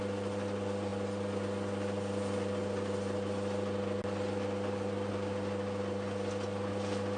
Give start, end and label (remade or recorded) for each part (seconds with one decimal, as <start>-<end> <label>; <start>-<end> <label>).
0.0-7.2 recorded